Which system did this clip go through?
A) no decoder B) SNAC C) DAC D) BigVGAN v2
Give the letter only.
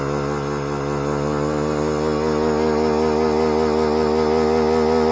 A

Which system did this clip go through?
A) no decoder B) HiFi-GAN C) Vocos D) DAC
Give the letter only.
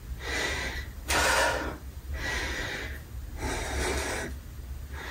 A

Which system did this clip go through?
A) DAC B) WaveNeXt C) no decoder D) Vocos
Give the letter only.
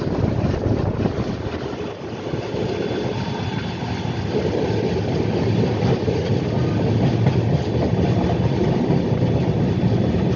C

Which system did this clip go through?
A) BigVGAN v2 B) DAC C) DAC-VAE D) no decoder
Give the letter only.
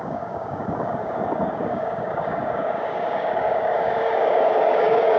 B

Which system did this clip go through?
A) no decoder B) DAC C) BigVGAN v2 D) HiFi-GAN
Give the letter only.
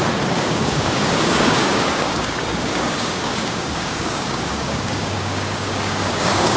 B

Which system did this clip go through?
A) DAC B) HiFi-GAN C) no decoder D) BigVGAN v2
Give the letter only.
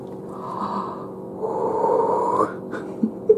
C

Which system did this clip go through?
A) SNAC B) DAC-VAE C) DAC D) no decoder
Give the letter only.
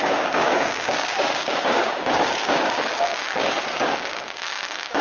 C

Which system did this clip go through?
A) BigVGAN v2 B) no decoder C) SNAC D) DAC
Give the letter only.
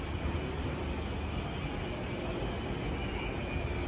B